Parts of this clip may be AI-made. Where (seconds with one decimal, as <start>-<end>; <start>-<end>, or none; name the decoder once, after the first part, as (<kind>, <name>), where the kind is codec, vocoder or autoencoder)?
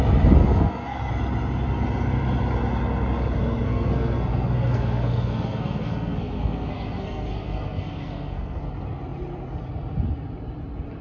0.4-1.1 (codec, SNAC); 3.4-8.6